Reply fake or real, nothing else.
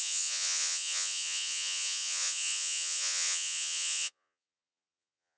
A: fake